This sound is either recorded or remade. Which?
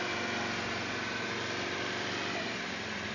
remade